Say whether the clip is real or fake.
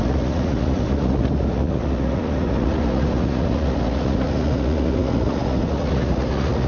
fake